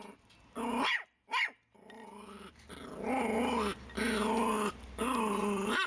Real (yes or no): yes